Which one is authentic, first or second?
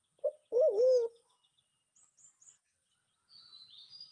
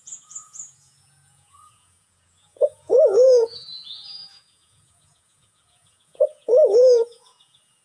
first